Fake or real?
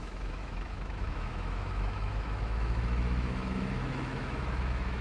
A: fake